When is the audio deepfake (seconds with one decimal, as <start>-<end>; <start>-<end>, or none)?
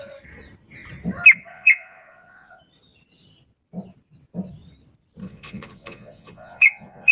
1.5-2.6; 5.2-7.1